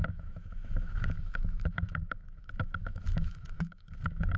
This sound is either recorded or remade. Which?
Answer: remade